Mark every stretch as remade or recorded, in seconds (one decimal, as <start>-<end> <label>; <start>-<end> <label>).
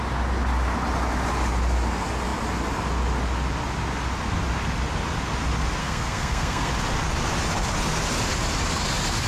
0.0-5.8 recorded; 5.8-6.7 remade; 6.7-9.3 recorded